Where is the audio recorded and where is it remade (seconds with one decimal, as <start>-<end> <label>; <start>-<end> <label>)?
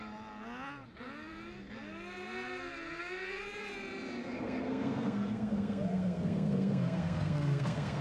0.0-4.2 recorded; 4.2-8.0 remade